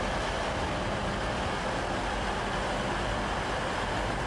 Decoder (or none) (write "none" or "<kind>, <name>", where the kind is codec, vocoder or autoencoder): none